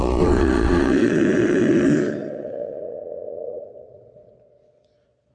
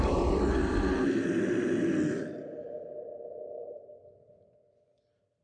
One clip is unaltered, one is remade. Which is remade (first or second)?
first